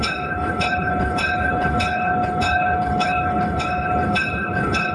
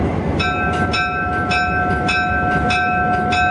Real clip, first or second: second